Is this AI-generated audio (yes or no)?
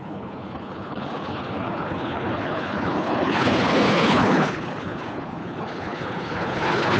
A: yes